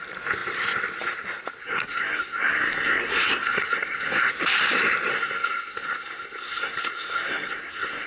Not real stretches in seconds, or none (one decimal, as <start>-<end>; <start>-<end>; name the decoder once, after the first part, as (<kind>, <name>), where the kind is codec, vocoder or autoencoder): 1.6-4.3 (codec, SNAC); 5.1-8.1